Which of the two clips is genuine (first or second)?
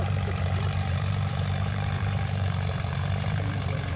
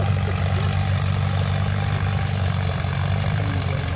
second